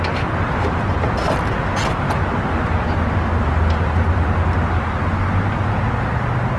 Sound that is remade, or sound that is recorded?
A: recorded